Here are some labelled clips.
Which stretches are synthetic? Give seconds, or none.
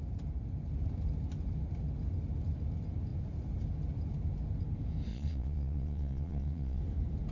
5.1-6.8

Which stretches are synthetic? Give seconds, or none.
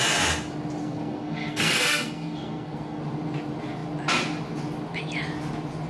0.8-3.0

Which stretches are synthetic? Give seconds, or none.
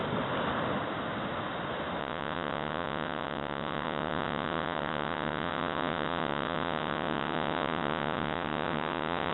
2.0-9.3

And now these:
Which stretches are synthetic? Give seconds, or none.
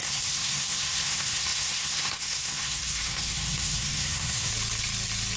0.0-4.5